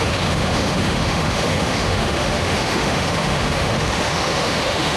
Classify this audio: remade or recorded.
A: remade